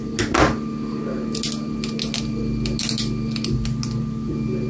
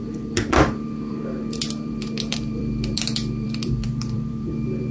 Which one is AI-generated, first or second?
second